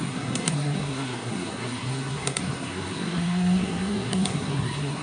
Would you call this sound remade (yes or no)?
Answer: yes